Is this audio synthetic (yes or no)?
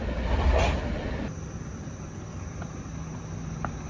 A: no